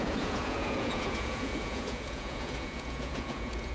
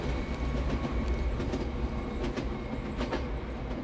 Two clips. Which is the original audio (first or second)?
second